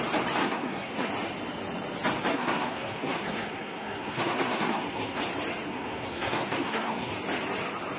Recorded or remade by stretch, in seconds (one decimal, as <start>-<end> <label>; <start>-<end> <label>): 0.0-0.4 recorded; 0.4-1.1 remade; 1.1-2.3 recorded; 2.3-5.2 remade; 5.2-5.7 recorded; 5.7-7.1 remade; 7.1-8.0 recorded